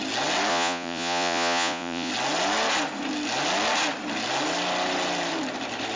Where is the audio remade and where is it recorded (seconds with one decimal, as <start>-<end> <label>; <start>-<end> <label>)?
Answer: 0.0-0.5 recorded; 0.5-2.1 remade; 2.1-6.0 recorded